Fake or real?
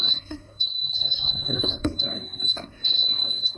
fake